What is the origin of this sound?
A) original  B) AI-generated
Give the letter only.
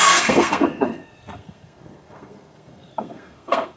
B